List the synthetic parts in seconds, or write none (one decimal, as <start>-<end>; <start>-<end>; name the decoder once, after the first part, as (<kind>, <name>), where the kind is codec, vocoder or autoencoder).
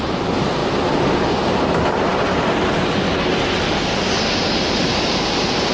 none